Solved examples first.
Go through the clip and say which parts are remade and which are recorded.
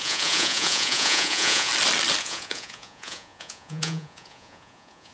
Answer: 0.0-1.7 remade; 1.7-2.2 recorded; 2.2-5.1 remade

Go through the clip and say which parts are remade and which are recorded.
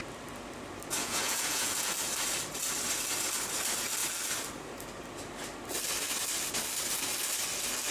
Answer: 0.0-1.0 recorded; 1.0-1.9 remade; 1.9-7.9 recorded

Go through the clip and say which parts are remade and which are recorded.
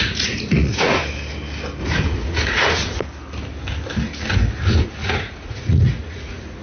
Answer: 0.0-1.0 remade; 1.0-1.8 recorded; 1.8-3.0 remade; 3.0-5.0 recorded; 5.0-6.6 remade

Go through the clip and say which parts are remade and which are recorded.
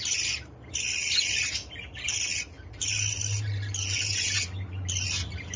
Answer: 0.0-5.6 recorded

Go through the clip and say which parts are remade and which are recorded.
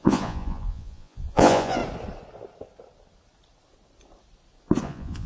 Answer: 0.0-1.8 remade; 1.8-4.8 recorded; 4.8-5.3 remade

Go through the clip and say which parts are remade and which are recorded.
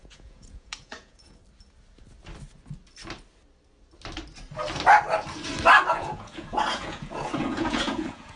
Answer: 0.0-1.4 remade; 1.4-5.9 recorded; 5.9-8.4 remade